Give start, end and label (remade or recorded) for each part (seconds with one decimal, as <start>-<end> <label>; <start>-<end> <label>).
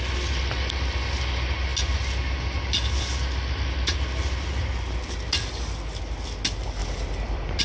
0.0-7.6 recorded